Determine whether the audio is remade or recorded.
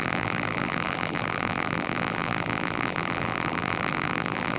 remade